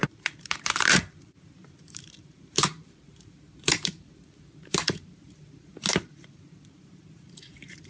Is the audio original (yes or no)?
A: no